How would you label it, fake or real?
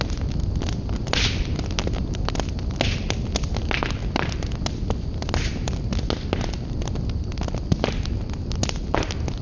real